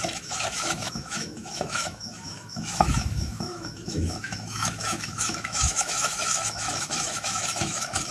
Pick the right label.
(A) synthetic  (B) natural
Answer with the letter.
A